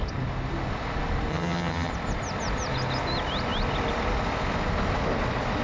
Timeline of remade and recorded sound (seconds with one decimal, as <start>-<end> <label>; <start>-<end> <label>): 0.0-1.3 recorded; 1.3-1.9 remade; 1.9-5.6 recorded